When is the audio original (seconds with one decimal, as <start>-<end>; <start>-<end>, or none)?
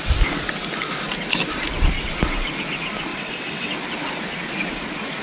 0.0-3.1; 3.7-5.2